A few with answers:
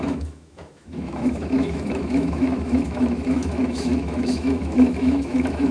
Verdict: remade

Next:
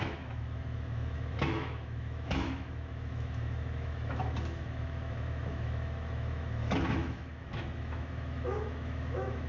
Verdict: remade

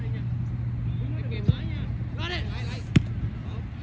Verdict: recorded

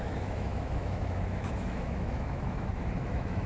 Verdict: remade